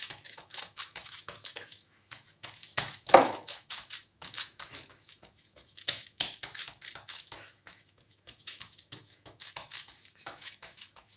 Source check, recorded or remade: remade